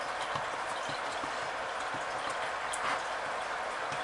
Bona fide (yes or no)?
yes